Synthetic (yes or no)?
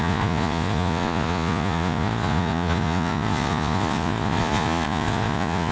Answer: yes